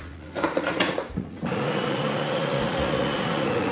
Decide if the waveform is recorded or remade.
remade